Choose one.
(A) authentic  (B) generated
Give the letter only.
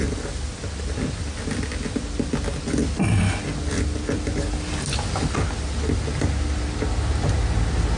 A